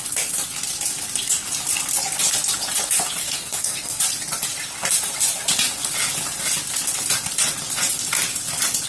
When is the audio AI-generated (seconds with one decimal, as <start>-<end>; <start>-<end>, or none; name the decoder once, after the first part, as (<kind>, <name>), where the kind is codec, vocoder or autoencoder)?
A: 3.2-4.0 (codec, SNAC)